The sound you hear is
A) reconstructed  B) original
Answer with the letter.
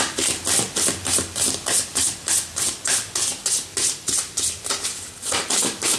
B